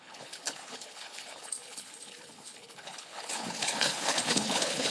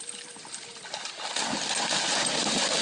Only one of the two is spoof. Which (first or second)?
first